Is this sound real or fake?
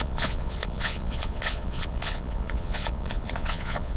fake